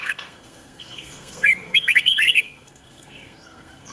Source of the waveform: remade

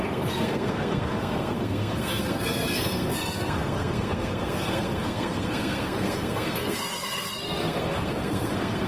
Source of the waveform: remade